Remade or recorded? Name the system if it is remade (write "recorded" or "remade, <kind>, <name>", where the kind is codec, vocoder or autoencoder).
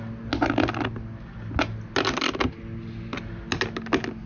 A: recorded